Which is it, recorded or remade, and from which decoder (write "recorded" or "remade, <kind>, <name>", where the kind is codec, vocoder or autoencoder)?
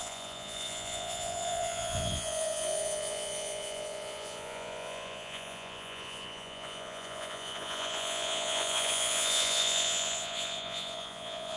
remade, vocoder, Vocos